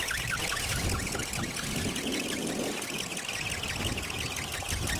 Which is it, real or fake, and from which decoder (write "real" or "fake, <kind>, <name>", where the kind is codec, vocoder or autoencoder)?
real